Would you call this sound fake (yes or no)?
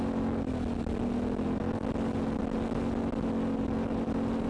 no